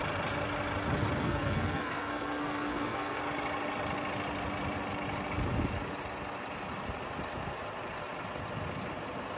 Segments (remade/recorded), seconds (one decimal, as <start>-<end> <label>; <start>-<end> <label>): 0.0-1.2 recorded; 1.2-3.2 remade; 3.2-9.4 recorded